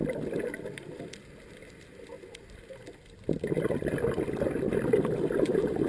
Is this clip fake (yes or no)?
no